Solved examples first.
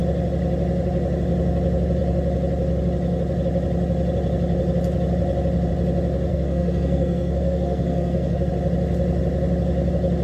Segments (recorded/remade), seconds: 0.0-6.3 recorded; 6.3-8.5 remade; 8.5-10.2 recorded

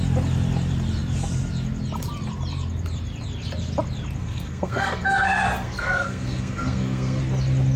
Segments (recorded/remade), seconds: 0.0-4.2 recorded; 4.2-7.2 remade; 7.2-7.8 recorded

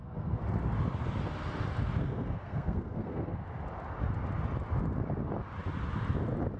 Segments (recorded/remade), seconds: 0.0-0.4 remade; 0.4-2.0 recorded; 2.0-3.4 remade; 3.4-6.6 recorded

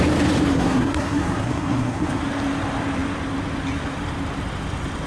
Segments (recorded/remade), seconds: 0.0-0.5 recorded; 0.5-2.2 remade; 2.2-5.1 recorded

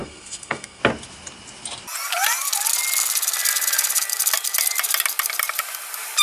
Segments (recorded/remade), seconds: 0.0-0.8 remade; 0.8-6.2 recorded

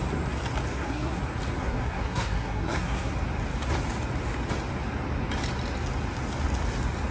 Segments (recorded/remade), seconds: 0.0-0.7 recorded; 0.7-1.2 remade; 1.2-1.6 recorded; 1.6-3.1 remade; 3.1-7.1 recorded

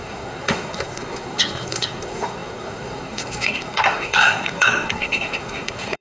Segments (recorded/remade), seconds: 0.0-6.0 remade